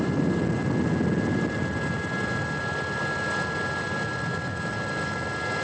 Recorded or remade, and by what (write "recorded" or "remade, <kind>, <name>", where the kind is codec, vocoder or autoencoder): recorded